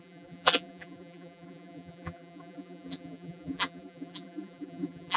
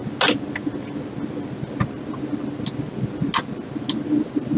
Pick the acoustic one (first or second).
second